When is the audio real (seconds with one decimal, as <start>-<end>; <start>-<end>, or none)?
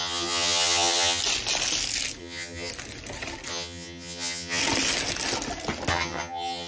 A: 1.2-2.2; 2.7-3.5; 4.6-5.9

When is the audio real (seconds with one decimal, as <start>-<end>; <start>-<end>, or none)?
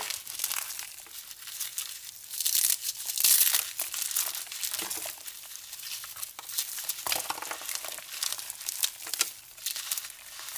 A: 0.0-10.6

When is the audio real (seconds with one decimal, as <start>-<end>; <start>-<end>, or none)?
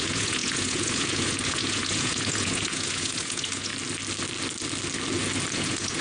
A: 3.7-5.5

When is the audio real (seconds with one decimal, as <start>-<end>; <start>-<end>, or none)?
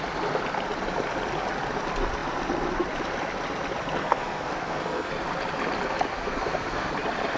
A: 0.0-4.0; 5.1-6.1; 6.9-7.4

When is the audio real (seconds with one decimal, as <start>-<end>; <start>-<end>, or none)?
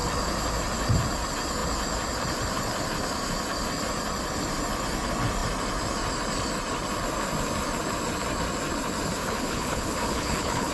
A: 0.0-9.2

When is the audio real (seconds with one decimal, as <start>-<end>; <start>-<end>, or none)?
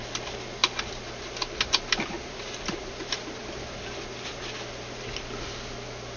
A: 0.0-6.2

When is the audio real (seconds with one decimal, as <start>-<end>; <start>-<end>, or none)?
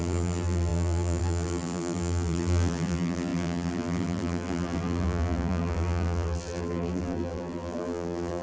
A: none